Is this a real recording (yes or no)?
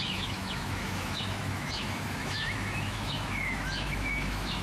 no